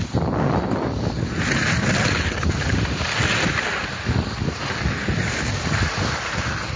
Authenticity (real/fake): real